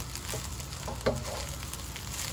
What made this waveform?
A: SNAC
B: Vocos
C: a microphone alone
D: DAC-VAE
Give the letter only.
C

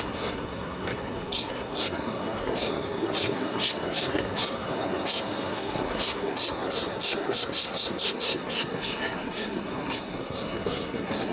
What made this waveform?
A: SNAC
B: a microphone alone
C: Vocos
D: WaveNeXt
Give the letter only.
A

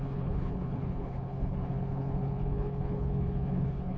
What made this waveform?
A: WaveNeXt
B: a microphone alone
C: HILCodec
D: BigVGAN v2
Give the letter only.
C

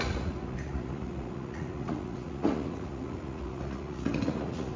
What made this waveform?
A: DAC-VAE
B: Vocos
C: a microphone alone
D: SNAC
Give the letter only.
B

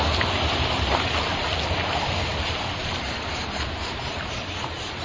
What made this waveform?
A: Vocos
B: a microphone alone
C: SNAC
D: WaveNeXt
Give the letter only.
B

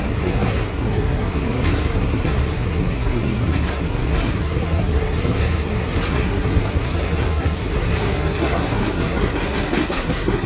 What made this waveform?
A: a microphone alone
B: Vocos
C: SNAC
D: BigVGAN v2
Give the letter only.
C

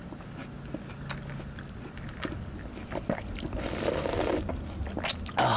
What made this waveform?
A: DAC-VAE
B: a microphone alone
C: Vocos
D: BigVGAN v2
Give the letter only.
B